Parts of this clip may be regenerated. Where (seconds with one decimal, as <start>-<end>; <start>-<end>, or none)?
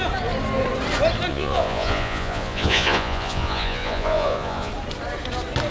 1.3-4.7